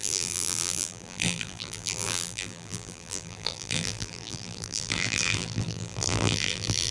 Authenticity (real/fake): fake